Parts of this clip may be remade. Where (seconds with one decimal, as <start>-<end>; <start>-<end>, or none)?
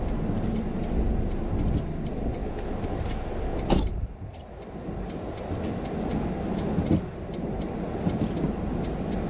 none